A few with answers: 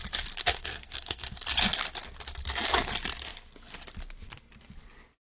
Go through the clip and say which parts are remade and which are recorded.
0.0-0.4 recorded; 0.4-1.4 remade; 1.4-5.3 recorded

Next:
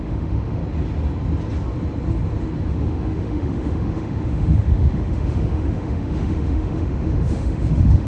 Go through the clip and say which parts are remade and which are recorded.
0.0-0.6 remade; 0.6-2.7 recorded; 2.7-8.1 remade

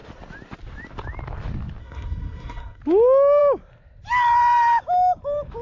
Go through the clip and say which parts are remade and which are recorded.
0.0-1.8 recorded; 1.8-2.8 remade; 2.8-5.6 recorded

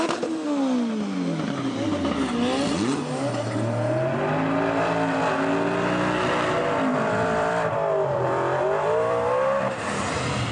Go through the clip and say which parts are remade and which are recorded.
0.0-6.9 recorded; 6.9-10.1 remade; 10.1-10.5 recorded

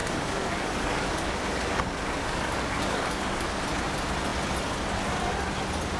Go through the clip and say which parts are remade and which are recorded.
0.0-3.6 remade; 3.6-6.0 recorded

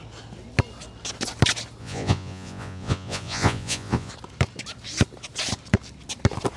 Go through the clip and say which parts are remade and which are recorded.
0.0-1.8 recorded; 1.8-4.1 remade; 4.1-6.6 recorded

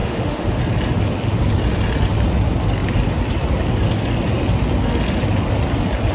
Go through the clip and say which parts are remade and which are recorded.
0.0-0.6 remade; 0.6-6.1 recorded